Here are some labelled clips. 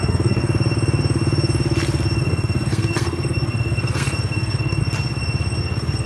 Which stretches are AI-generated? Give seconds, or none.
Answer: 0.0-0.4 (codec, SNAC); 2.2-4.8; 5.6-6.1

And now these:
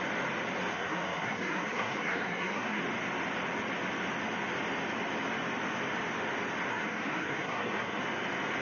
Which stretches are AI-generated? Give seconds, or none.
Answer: 0.7-2.8 (codec, SNAC); 6.7-8.0

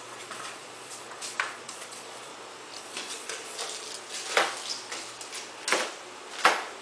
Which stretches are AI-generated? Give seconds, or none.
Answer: 0.0-2.3 (vocoder, Vocos); 2.8-3.6

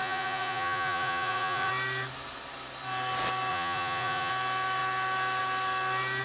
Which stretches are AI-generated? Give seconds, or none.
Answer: 0.0-1.7 (vocoder, Vocos); 3.5-4.3

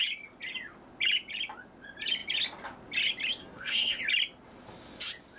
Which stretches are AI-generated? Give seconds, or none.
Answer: 3.4-4.0 (codec, SNAC)